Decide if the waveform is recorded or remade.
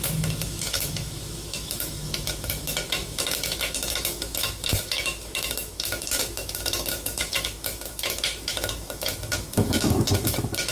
remade